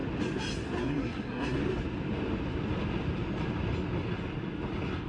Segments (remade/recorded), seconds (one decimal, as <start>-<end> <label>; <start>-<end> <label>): 0.0-0.8 recorded; 0.8-1.6 remade; 1.6-5.1 recorded